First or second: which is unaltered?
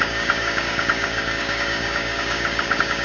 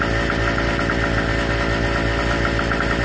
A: second